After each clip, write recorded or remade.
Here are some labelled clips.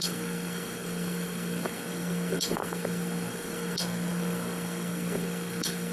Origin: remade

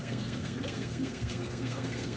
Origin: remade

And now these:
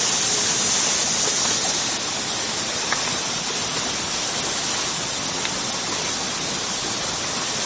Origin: recorded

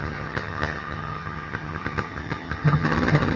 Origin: remade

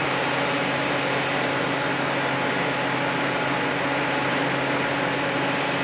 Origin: recorded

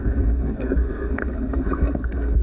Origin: remade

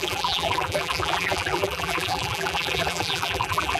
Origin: remade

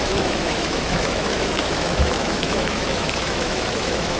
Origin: remade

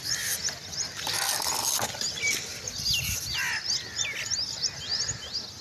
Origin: recorded